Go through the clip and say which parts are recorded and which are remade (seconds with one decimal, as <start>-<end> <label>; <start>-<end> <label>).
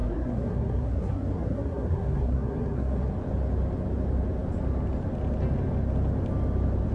0.0-3.1 remade; 3.1-6.9 recorded